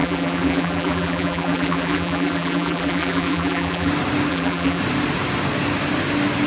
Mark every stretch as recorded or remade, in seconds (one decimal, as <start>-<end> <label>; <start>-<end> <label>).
0.0-3.9 remade; 3.9-4.3 recorded; 4.3-4.8 remade; 4.8-6.5 recorded